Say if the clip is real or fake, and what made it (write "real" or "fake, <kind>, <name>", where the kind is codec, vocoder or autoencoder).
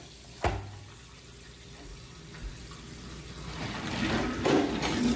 real